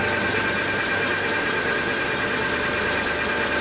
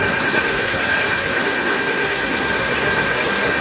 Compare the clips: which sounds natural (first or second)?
first